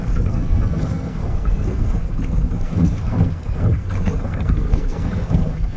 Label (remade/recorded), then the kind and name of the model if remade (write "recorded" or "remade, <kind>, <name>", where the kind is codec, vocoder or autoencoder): remade, codec, SNAC